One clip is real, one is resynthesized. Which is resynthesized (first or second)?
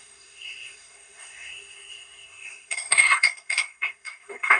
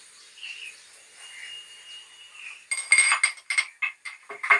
first